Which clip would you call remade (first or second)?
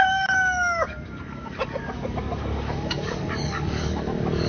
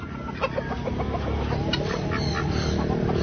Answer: first